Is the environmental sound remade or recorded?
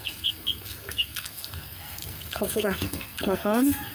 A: remade